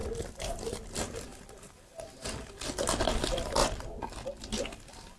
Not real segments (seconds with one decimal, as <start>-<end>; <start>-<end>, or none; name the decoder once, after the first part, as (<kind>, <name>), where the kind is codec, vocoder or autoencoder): none